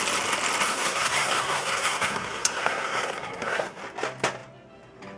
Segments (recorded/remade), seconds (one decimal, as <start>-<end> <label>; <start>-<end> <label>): 0.0-0.7 recorded; 0.7-3.8 remade; 3.8-5.2 recorded